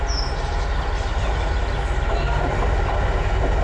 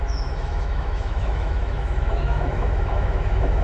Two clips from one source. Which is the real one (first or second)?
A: first